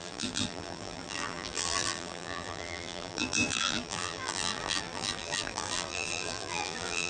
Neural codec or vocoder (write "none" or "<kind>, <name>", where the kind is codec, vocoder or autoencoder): vocoder, BigVGAN v2